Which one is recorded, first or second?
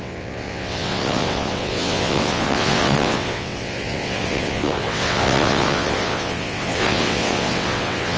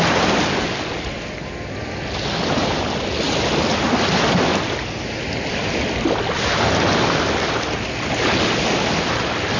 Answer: second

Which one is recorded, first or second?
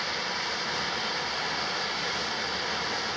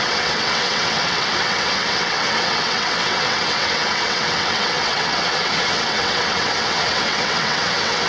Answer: first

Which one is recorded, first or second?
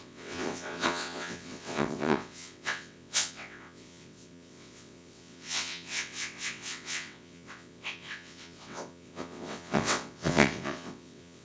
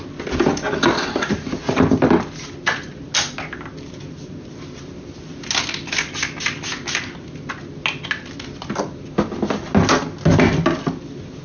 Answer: second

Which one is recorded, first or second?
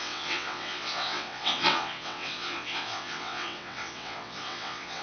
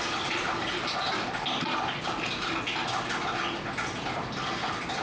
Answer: second